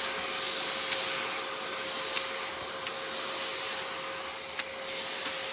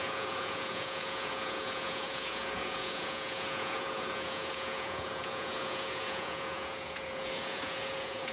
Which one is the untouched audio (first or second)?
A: first